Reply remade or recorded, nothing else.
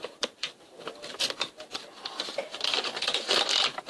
remade